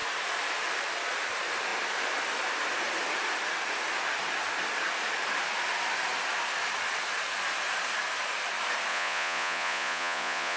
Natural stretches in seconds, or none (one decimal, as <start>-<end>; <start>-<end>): 0.0-8.9